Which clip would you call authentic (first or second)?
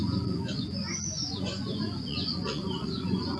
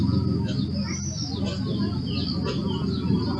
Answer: second